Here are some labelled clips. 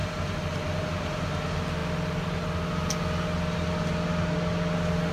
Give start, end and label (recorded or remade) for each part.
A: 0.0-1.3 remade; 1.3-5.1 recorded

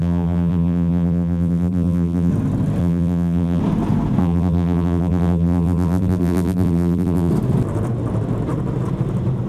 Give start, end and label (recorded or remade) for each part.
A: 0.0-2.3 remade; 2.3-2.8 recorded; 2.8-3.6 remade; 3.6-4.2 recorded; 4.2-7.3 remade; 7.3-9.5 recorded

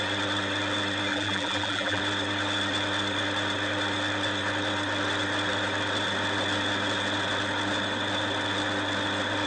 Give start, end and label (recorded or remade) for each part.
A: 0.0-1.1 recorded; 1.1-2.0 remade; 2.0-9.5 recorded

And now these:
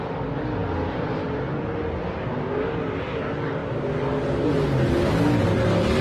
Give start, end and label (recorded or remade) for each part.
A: 0.0-6.0 recorded

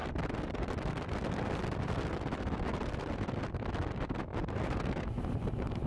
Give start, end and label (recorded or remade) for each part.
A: 0.0-3.5 remade; 3.5-4.3 recorded; 4.3-5.1 remade; 5.1-5.9 recorded

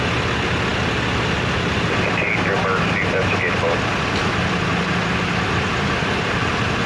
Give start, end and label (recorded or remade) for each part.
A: 0.0-4.7 recorded; 4.7-6.5 remade; 6.5-6.9 recorded